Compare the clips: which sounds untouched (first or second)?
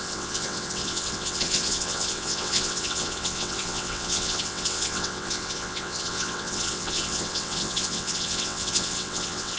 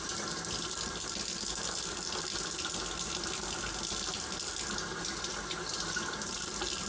second